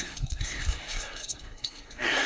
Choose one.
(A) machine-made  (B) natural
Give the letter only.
A